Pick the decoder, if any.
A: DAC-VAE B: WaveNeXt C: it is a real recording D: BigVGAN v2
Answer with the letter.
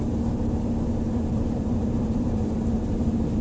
D